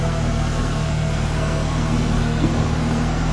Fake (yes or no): yes